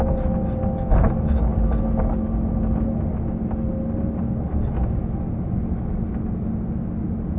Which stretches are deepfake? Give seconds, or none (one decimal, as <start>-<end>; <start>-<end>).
none